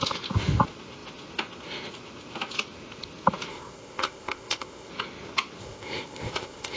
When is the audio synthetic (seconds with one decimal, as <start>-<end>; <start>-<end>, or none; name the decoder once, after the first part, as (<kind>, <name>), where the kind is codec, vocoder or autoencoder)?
3.5-4.9 (codec, ZipCodec); 5.6-6.8